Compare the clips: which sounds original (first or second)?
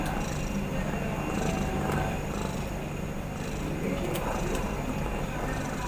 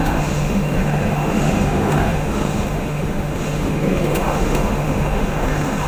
first